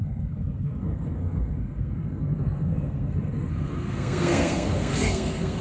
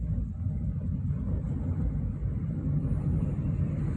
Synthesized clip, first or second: first